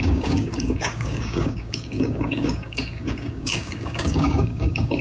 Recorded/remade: remade